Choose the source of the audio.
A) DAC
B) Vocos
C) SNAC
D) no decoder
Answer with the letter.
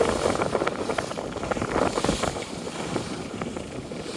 D